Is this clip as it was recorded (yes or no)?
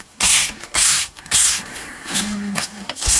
no